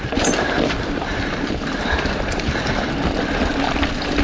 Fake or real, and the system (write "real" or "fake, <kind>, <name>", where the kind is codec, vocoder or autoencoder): fake, vocoder, BigVGAN v2